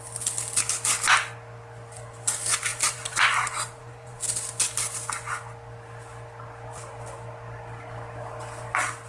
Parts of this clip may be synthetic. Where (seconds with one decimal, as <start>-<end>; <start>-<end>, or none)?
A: 2.7-4.2